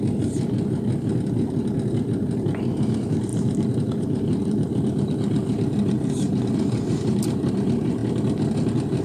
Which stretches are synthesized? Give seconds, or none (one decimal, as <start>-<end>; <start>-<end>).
3.3-7.5